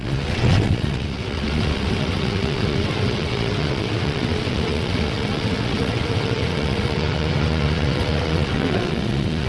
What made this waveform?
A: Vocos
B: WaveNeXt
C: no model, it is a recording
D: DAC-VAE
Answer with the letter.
B